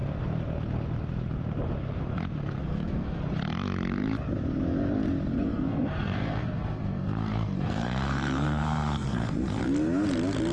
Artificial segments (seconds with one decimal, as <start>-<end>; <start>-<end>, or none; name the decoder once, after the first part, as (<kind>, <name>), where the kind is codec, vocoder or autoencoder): 2.6-3.2 (codec, SNAC); 5.3-9.6